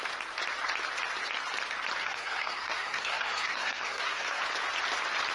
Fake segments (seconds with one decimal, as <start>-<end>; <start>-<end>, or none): 2.0-4.4

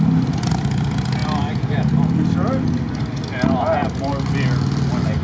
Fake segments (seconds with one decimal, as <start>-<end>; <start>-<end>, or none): none

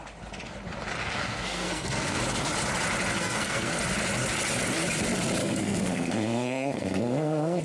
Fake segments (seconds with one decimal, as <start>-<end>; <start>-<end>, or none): 1.0-2.2; 3.2-3.8; 5.4-7.6

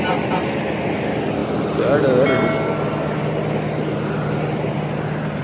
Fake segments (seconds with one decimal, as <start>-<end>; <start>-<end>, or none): none

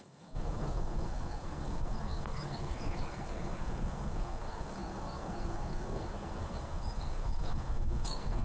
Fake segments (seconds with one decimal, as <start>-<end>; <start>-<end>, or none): 0.0-8.4

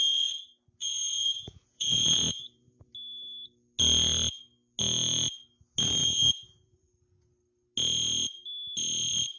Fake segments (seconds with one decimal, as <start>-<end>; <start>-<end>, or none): 0.8-2.9; 6.0-6.9

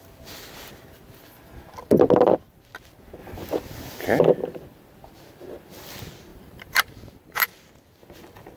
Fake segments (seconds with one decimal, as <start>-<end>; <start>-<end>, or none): 6.3-7.7

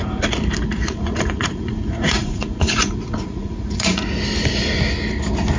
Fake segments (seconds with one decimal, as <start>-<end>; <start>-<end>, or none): 0.7-4.1